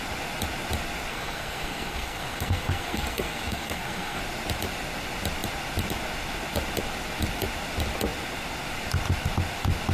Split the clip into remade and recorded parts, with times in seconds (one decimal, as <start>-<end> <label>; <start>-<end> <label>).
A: 0.0-1.1 recorded; 1.1-4.2 remade; 4.2-9.9 recorded